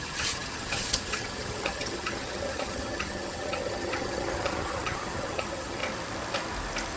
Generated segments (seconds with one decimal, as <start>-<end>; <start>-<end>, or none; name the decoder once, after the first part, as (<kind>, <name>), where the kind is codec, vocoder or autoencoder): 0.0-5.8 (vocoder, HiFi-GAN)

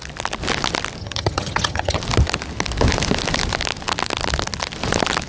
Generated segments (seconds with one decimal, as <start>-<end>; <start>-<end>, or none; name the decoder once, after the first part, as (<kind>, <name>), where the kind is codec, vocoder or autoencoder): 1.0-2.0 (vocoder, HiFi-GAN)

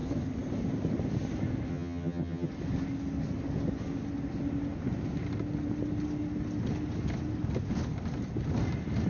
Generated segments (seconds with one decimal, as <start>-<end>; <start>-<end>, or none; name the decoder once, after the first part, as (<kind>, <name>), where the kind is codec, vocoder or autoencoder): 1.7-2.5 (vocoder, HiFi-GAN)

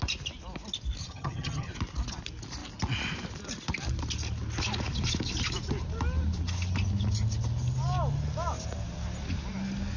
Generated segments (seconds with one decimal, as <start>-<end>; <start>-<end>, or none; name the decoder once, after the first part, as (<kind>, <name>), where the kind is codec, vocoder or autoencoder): 1.0-1.7 (vocoder, HiFi-GAN)